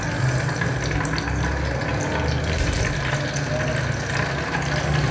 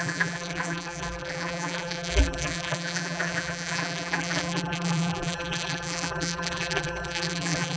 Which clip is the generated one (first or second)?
second